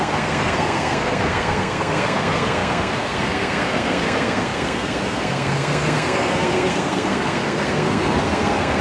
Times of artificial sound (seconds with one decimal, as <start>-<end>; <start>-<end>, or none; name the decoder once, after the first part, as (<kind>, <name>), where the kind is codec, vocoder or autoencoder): 0.0-8.8 (codec, SNAC)